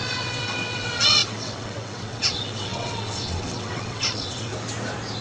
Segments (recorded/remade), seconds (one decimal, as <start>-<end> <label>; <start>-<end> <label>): 0.0-4.5 remade; 4.5-5.2 recorded